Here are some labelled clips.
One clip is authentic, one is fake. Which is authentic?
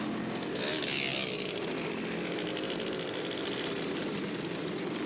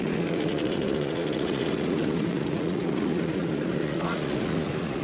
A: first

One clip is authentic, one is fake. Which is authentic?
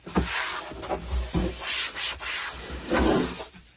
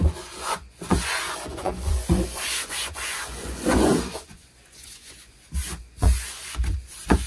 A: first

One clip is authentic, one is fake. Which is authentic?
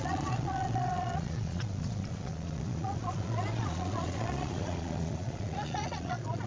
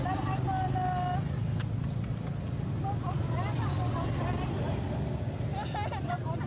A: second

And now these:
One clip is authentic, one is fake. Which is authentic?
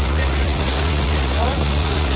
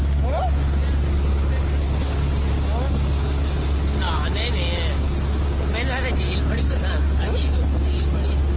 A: second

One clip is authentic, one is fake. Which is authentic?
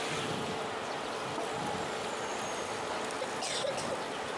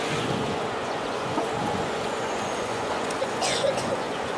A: first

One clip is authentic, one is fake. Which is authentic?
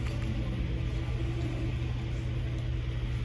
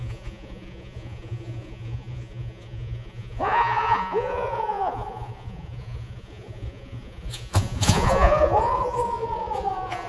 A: first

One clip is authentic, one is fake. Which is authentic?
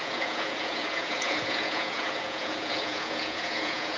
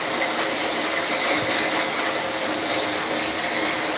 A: second